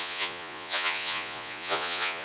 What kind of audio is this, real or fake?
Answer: fake